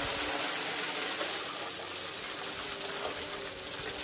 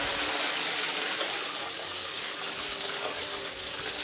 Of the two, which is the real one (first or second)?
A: first